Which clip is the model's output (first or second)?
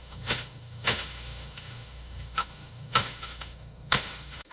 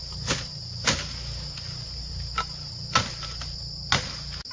first